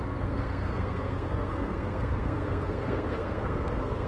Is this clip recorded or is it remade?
remade